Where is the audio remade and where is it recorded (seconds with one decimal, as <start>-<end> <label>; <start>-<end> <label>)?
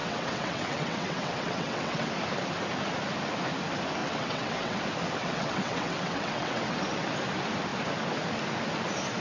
0.0-2.1 remade; 2.1-4.0 recorded; 4.0-4.8 remade; 4.8-5.2 recorded; 5.2-6.8 remade; 6.8-9.2 recorded